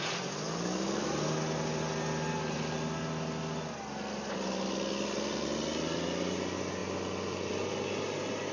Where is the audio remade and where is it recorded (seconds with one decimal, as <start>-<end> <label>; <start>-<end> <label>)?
0.0-8.5 recorded